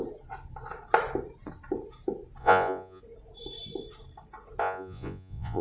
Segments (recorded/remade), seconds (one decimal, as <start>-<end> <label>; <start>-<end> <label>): 0.0-2.4 recorded; 2.4-3.0 remade; 3.0-4.6 recorded; 4.6-5.6 remade